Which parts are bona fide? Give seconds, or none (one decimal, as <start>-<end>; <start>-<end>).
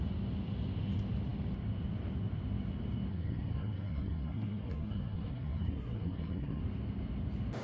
0.0-3.1; 6.6-7.6